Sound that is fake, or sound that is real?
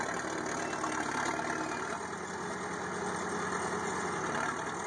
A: real